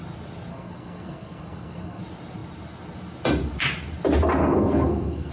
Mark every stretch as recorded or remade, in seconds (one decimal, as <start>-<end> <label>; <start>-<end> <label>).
0.0-0.5 recorded; 0.5-2.0 remade; 2.0-4.4 recorded; 4.4-5.3 remade